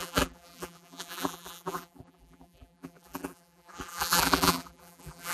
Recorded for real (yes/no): no